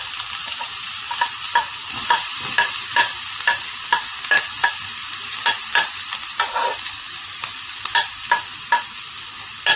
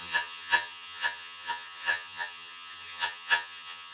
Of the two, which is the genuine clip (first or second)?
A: first